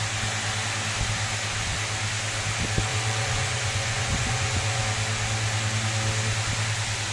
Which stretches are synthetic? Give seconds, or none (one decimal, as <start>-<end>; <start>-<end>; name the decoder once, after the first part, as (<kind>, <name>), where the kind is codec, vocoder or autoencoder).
2.9-4.8 (vocoder, Vocos)

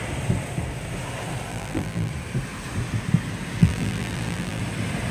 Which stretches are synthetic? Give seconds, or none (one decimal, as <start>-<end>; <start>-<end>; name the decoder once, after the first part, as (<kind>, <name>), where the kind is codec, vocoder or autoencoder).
1.5-2.1 (vocoder, BigVGAN v2); 3.6-4.6

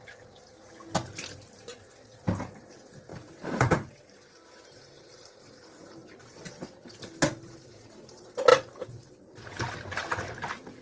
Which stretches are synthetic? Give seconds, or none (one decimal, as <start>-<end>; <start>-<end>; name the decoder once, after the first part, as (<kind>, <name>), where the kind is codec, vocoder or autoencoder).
3.1-5.3 (vocoder, BigVGAN v2); 8.5-9.6

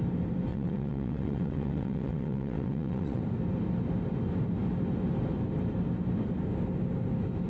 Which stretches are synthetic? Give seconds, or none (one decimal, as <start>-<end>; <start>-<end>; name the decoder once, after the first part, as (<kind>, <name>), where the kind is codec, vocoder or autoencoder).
0.5-3.2 (vocoder, WaveNeXt)

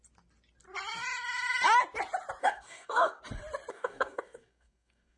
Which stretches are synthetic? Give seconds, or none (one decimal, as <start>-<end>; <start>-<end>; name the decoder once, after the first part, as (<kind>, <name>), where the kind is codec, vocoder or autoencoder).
2.4-3.2 (codec, DAC); 3.7-5.2